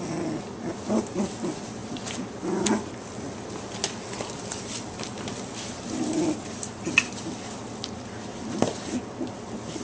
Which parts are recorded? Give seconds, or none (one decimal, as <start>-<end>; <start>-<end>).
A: 0.0-9.8